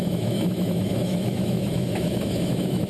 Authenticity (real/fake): fake